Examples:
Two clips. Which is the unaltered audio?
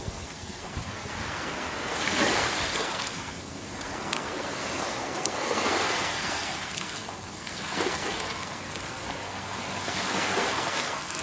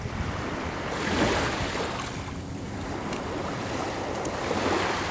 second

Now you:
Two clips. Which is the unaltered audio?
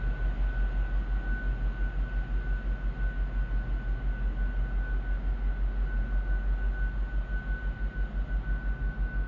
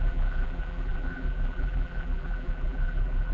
first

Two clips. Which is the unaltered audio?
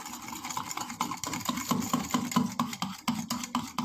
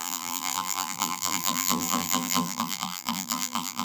first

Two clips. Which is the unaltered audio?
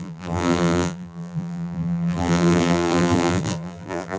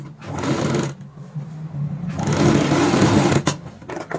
second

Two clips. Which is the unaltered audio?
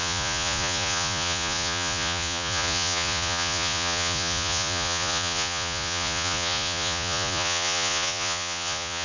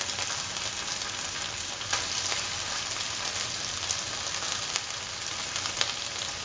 second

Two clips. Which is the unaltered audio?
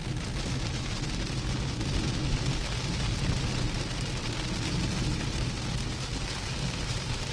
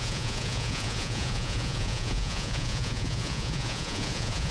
first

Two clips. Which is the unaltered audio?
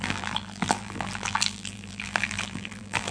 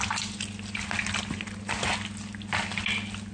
second